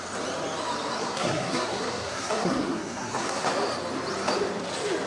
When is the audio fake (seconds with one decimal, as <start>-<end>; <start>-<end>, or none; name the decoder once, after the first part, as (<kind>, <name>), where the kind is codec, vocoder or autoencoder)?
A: 1.0-3.5 (codec, SNAC)